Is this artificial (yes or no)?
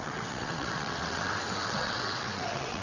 yes